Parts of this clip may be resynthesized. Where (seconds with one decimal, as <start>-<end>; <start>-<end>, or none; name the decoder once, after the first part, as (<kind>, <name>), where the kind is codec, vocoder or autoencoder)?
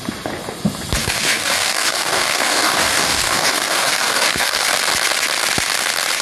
1.0-4.7 (codec, DAC)